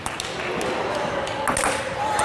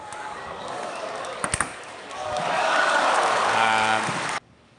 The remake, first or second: second